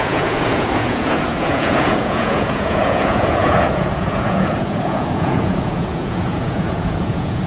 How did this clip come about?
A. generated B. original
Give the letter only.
A